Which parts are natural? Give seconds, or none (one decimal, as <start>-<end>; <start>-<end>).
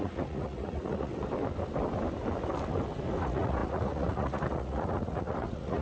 1.1-3.2